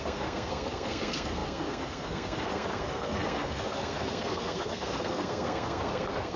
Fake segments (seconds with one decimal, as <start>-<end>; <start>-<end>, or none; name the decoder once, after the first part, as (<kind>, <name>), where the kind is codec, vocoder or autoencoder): 0.0-6.4 (codec, SNAC)